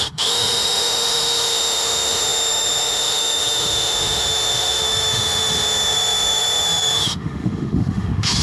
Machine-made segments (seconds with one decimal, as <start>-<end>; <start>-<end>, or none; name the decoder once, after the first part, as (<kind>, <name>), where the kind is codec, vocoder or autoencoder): 0.0-8.4 (autoencoder, DAC-VAE)